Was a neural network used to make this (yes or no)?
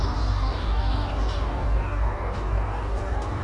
yes